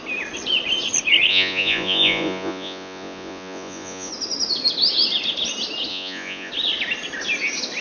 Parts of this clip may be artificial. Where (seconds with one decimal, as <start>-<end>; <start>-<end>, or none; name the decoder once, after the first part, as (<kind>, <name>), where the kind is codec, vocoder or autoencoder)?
1.3-4.1 (vocoder, Vocos); 5.9-6.5

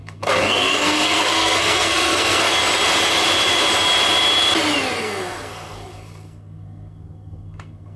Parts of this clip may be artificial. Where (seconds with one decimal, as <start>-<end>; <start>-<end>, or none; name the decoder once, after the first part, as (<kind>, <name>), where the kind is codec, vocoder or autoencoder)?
0.0-2.5 (codec, SNAC); 5.0-8.0

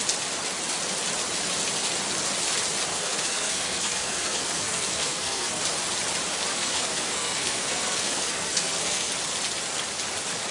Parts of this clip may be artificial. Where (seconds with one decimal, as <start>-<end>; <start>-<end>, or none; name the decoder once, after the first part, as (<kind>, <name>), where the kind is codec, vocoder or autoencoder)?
2.9-5.6 (codec, SNAC); 6.5-9.1

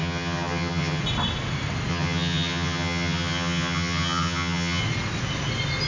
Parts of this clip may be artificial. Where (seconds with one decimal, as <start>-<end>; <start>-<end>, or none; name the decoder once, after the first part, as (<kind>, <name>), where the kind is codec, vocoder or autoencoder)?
0.0-1.0 (vocoder, HiFi-GAN); 1.9-4.8

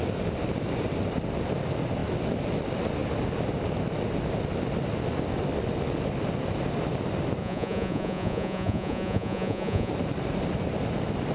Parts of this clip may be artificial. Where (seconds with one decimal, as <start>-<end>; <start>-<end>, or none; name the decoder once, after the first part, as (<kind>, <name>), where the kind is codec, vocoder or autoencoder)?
7.4-9.9 (vocoder, Vocos)

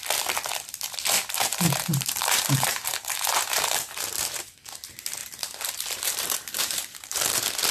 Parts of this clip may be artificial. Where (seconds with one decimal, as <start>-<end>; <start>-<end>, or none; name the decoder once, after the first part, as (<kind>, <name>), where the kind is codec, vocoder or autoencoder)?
1.5-4.4 (vocoder, BigVGAN v2); 5.2-7.3